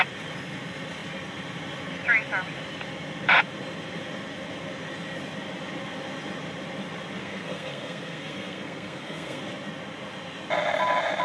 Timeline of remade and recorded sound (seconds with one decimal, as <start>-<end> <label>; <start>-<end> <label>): 0.0-7.2 recorded; 7.2-9.4 remade; 9.4-11.2 recorded